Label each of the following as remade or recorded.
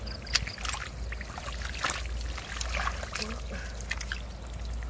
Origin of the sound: recorded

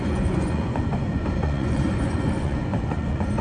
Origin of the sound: remade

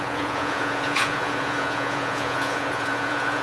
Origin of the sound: remade